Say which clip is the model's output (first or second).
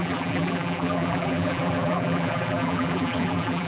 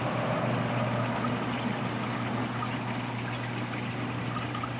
first